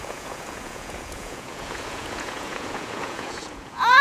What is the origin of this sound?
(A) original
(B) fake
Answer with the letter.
B